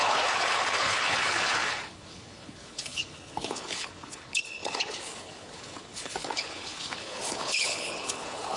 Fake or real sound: fake